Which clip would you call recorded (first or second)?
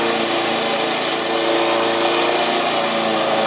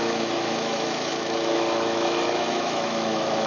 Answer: first